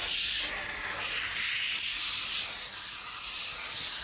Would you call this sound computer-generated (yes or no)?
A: no